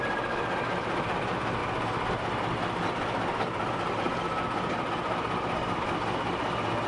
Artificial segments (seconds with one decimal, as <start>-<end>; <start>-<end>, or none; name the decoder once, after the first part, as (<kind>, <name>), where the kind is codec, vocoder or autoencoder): none